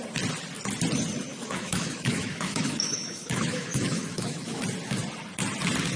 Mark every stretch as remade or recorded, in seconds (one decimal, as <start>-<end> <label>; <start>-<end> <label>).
0.0-1.3 recorded; 1.3-4.6 remade; 4.6-6.0 recorded